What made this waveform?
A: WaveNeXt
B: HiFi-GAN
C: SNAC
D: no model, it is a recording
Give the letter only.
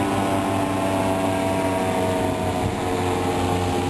D